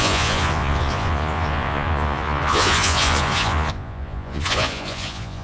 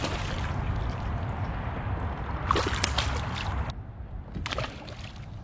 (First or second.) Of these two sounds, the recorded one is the second